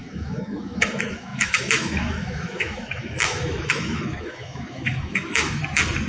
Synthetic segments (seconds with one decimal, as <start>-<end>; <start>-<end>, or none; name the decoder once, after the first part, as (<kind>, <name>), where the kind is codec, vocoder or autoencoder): 0.0-5.6 (autoencoder, DAC-VAE)